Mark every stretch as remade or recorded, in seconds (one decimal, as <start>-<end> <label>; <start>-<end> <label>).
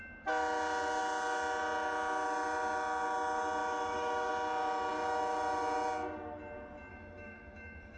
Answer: 0.0-3.6 recorded; 3.6-4.3 remade; 4.3-6.9 recorded; 6.9-8.0 remade